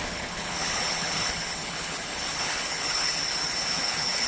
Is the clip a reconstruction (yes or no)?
yes